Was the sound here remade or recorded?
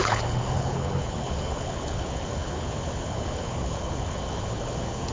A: remade